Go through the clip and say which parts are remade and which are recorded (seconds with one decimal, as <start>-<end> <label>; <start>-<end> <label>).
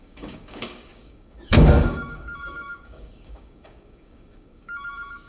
0.0-5.3 remade